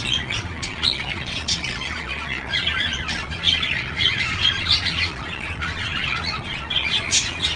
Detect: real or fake fake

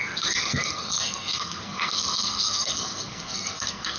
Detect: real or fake fake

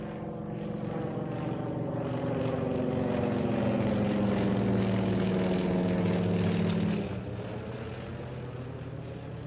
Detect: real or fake real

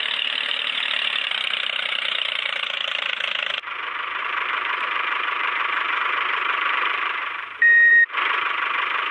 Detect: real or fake fake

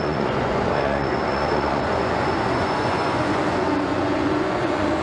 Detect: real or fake fake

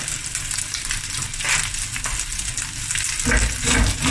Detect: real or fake real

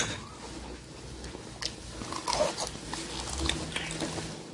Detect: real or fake real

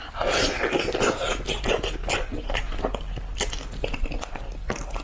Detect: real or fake real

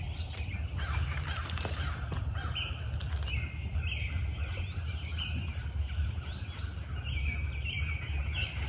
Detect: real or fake real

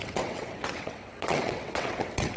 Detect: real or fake fake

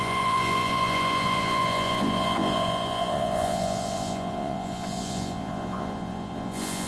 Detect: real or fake fake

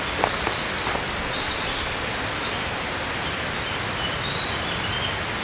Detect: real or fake real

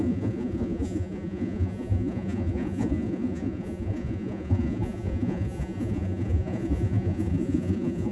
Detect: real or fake fake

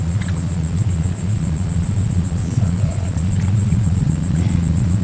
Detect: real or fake fake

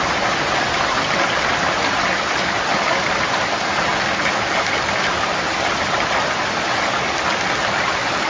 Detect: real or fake real